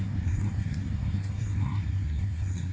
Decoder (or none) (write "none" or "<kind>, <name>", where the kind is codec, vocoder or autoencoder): codec, SNAC